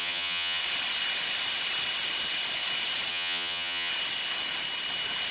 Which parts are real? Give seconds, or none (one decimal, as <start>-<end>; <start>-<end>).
0.6-3.1; 3.9-5.3